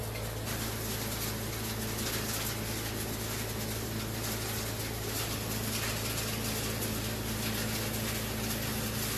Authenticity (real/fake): real